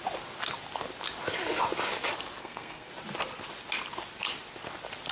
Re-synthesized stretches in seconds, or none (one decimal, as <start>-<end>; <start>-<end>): 2.4-2.9